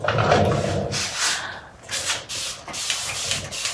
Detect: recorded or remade recorded